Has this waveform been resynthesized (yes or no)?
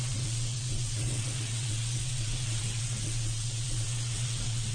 yes